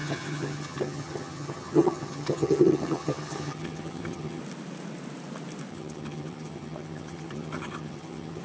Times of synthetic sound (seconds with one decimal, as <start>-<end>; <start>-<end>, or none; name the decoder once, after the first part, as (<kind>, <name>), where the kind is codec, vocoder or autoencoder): 0.0-4.4 (vocoder, HiFi-GAN); 5.7-8.4